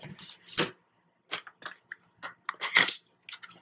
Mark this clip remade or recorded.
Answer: recorded